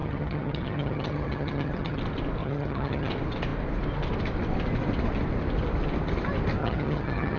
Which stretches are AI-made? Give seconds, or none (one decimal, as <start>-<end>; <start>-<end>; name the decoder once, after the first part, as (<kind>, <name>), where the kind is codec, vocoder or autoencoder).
0.0-2.0 (vocoder, HiFi-GAN); 2.4-3.1; 6.6-7.4